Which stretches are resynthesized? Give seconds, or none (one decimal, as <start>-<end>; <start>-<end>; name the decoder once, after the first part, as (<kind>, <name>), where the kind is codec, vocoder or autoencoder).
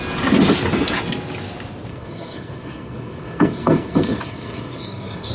1.9-5.3 (codec, SNAC)